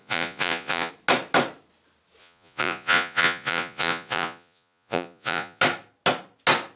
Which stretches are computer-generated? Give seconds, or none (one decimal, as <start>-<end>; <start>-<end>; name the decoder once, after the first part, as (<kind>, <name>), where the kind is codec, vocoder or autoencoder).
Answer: 0.0-0.9 (vocoder, Vocos); 2.2-5.6